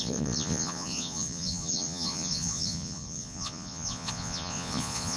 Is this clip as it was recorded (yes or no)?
no